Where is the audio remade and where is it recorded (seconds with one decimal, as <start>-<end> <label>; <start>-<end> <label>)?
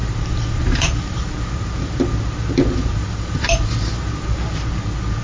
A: 0.0-2.0 remade; 2.0-2.9 recorded; 2.9-4.4 remade; 4.4-5.2 recorded